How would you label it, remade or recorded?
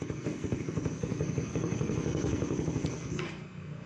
remade